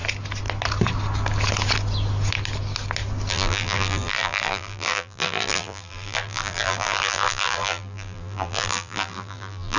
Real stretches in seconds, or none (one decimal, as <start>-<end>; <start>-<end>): 0.0-3.3